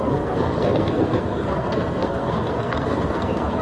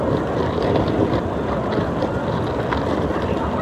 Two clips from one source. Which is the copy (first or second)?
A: first